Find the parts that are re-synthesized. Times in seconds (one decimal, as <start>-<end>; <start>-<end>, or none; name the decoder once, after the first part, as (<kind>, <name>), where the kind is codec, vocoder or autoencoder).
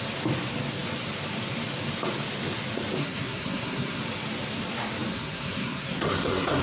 3.0-4.0 (codec, SNAC); 5.1-6.6